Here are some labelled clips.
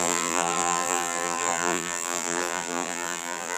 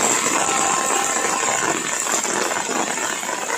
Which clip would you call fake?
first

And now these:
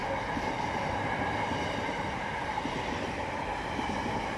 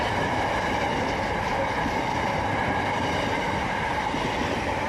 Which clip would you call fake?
second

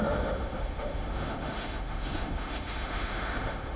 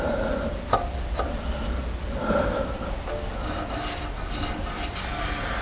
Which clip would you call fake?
first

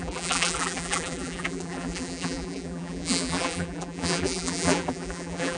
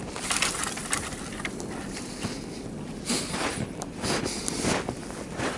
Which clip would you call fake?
first